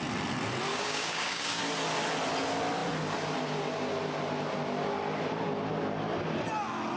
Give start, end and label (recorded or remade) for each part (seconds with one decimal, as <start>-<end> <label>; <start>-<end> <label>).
0.0-0.7 recorded; 0.7-1.6 remade; 1.6-7.0 recorded